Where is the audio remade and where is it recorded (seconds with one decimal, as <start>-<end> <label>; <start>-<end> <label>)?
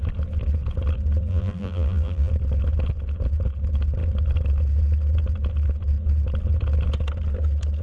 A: 0.0-1.3 recorded; 1.3-2.3 remade; 2.3-7.8 recorded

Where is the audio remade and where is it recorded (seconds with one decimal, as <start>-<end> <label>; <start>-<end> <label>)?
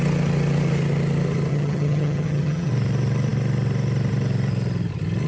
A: 0.0-1.5 recorded; 1.5-2.7 remade; 2.7-5.3 recorded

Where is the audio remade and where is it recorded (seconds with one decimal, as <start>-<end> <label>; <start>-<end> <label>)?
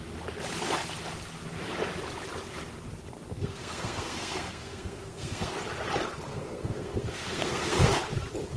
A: 0.0-3.3 recorded; 3.3-5.6 remade; 5.6-6.3 recorded; 6.3-7.9 remade; 7.9-8.6 recorded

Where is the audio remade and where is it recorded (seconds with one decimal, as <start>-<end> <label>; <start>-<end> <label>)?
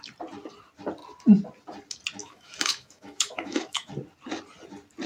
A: 0.0-2.2 recorded; 2.2-3.9 remade; 3.9-5.1 recorded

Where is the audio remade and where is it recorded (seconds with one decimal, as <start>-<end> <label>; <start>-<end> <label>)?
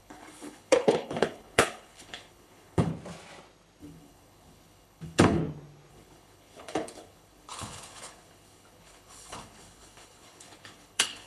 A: 0.0-2.9 remade; 2.9-3.8 recorded; 3.8-5.4 remade; 5.4-5.9 recorded; 5.9-11.3 remade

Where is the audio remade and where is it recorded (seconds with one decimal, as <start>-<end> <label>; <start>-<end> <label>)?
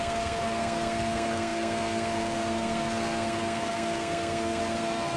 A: 0.0-5.2 remade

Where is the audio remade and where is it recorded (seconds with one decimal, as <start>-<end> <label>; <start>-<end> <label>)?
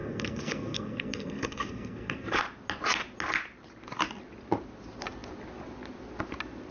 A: 0.0-2.4 remade; 2.4-6.7 recorded